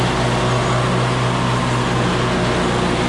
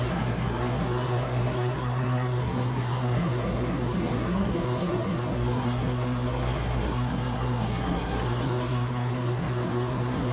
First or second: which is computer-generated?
second